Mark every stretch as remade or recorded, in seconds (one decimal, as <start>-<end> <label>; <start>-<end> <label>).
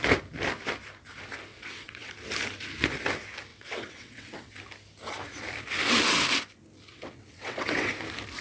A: 0.0-1.5 recorded; 1.5-2.1 remade; 2.1-3.5 recorded; 3.5-4.5 remade; 4.5-6.9 recorded; 6.9-7.9 remade; 7.9-8.4 recorded